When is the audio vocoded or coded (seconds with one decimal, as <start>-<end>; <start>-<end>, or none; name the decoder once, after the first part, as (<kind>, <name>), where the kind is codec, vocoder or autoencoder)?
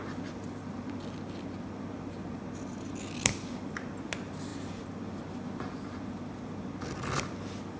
none